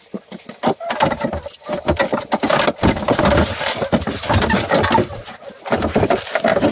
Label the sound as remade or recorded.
recorded